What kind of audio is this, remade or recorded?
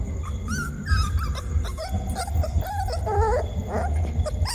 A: recorded